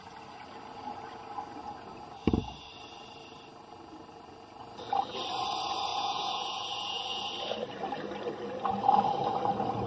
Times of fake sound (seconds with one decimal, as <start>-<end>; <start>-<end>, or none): 5.9-7.2